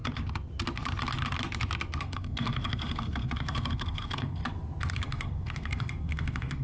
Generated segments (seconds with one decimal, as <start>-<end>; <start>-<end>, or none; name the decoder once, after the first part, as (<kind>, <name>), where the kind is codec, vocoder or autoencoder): 2.0-4.4 (codec, SNAC); 4.9-6.6